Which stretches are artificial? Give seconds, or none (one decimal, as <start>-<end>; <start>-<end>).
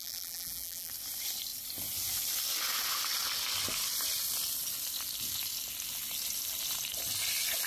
0.0-0.9